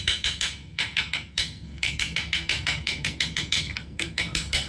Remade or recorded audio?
remade